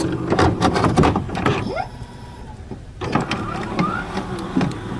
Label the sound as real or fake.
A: fake